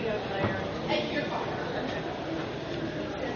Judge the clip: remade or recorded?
recorded